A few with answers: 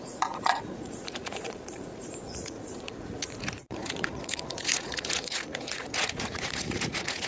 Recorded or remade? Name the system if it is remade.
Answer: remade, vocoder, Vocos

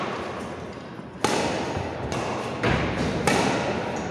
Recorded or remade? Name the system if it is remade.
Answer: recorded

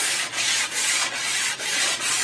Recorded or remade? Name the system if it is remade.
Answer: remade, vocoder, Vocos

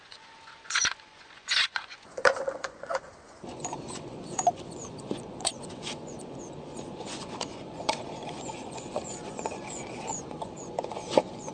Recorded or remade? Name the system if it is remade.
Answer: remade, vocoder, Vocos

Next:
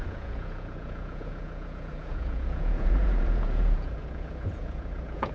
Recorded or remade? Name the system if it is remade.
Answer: remade, vocoder, Vocos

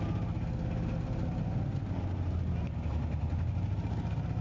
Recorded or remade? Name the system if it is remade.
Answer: recorded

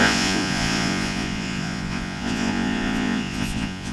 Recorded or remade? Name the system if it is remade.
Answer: remade, vocoder, Vocos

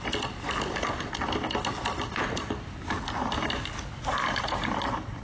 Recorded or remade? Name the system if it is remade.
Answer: recorded